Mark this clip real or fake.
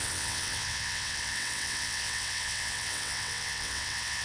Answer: fake